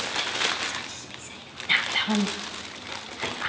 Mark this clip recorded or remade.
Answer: recorded